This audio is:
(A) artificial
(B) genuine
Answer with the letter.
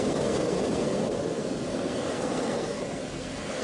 A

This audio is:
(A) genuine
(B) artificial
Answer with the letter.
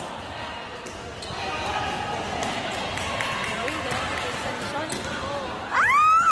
A